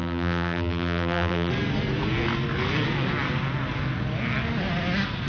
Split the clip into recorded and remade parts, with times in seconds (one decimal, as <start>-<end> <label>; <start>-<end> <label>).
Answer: 0.0-1.5 remade; 1.5-5.3 recorded